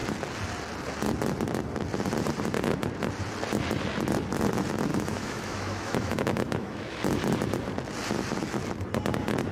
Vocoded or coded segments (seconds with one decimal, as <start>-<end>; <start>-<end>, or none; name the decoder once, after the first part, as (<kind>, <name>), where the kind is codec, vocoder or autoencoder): 4.9-7.0 (autoencoder, DAC-VAE)